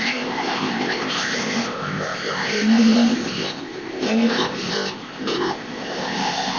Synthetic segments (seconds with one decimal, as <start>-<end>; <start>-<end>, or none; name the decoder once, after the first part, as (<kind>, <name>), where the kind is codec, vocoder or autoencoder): 0.0-6.6 (codec, ZipCodec)